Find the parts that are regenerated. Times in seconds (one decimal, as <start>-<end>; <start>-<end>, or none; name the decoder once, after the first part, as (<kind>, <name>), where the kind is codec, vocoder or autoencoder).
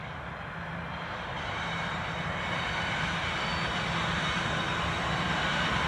none